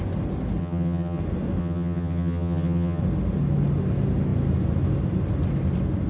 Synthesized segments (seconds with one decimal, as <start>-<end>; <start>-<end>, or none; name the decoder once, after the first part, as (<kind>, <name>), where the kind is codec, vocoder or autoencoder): 0.6-1.2 (vocoder, HiFi-GAN); 1.6-3.0